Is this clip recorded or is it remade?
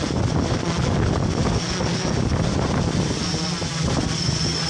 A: recorded